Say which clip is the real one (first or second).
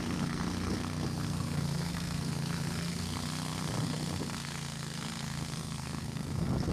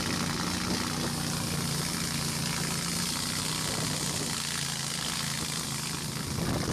second